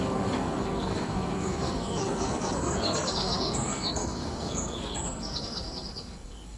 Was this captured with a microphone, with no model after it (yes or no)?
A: no